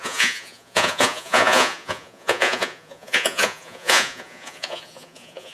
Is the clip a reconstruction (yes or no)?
yes